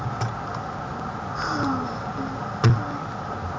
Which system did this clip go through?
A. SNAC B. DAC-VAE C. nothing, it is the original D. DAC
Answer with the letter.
C